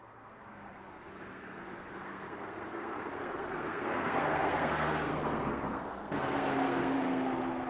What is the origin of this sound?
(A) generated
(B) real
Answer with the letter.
A